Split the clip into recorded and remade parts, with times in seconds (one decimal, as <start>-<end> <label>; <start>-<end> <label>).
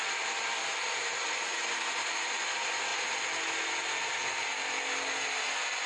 0.0-0.6 recorded; 0.6-2.4 remade; 2.4-5.9 recorded